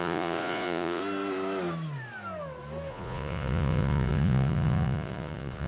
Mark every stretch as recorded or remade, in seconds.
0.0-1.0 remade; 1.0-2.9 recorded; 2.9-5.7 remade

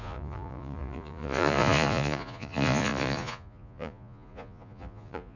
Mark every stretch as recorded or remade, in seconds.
0.0-5.4 remade

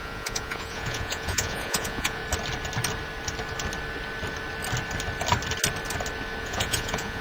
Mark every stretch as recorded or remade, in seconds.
0.0-2.2 remade; 2.2-6.4 recorded; 6.4-7.2 remade